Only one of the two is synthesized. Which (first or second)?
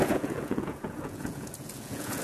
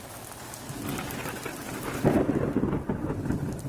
first